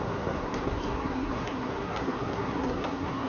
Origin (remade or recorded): remade